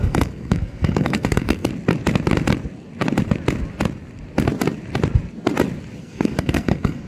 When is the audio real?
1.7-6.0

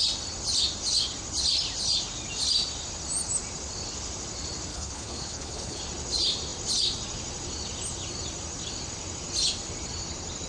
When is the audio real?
0.0-4.7; 5.8-10.5

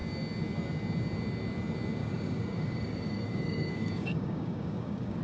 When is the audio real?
0.0-2.0